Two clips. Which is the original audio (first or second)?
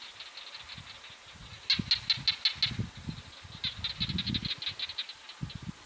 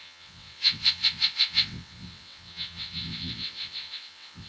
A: first